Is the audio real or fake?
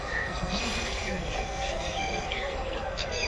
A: fake